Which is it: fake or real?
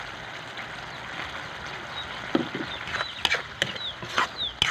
real